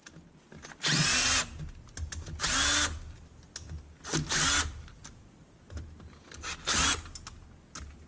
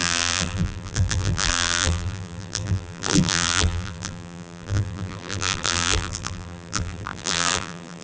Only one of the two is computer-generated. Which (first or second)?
second